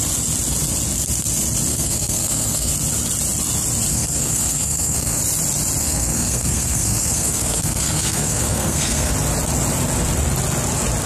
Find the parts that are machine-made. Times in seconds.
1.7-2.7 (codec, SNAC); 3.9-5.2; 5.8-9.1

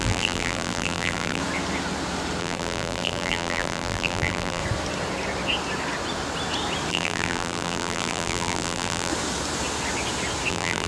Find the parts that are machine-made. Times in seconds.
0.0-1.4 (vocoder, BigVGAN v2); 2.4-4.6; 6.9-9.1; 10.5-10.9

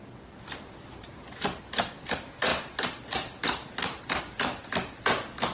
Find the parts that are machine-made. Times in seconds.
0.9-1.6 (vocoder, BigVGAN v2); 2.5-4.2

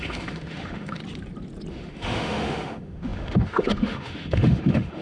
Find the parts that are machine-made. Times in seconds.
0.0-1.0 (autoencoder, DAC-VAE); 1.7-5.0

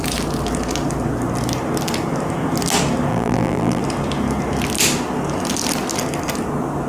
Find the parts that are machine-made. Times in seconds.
3.1-3.8 (vocoder, BigVGAN v2)

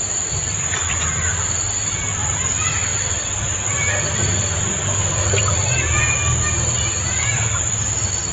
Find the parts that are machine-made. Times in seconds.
2.9-7.8 (vocoder, BigVGAN v2)

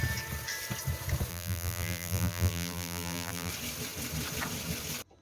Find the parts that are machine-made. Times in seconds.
1.3-3.5 (vocoder, BigVGAN v2)